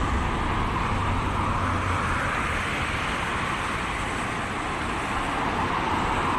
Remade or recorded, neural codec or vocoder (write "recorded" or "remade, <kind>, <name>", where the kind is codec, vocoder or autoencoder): recorded